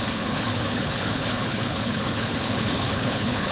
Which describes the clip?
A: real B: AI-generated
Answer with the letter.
B